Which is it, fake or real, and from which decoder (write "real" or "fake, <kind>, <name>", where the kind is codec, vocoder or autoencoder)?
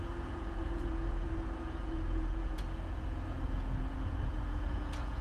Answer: fake, vocoder, Vocos